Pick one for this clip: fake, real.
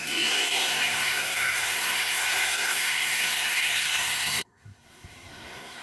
fake